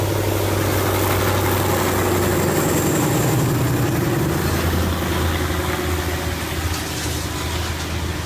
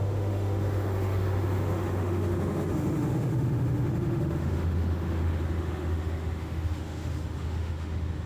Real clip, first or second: first